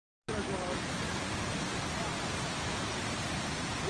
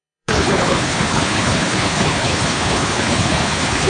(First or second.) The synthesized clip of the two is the second